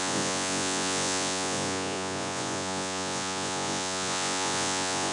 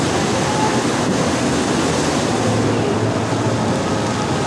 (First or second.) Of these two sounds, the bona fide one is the second